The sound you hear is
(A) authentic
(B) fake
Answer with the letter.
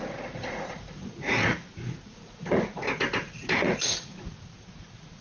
B